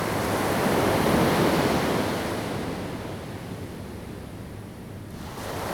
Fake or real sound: real